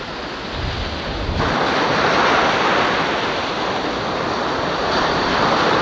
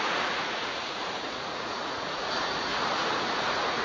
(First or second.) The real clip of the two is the first